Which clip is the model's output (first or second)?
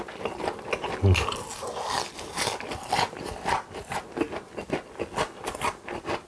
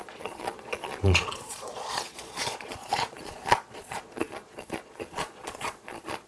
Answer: second